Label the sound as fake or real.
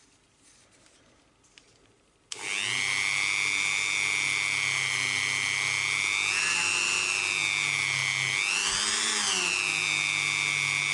real